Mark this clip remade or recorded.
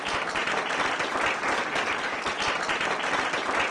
recorded